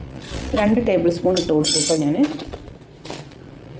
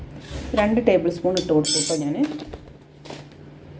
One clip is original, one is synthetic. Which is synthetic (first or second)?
first